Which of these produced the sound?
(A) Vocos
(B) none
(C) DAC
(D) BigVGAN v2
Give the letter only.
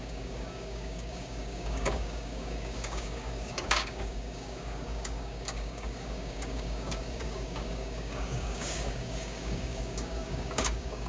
C